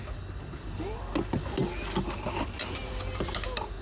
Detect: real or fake real